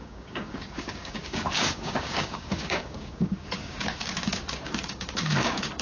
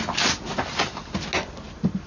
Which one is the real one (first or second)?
second